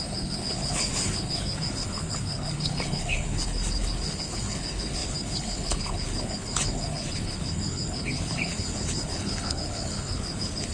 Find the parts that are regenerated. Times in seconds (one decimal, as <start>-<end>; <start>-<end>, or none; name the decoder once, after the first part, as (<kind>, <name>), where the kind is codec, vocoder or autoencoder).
0.0-10.7 (codec, HILCodec)